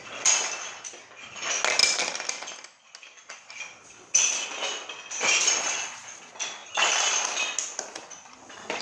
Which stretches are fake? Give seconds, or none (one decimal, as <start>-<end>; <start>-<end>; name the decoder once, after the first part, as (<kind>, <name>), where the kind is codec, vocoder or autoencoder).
none